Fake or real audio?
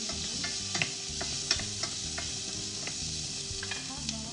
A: real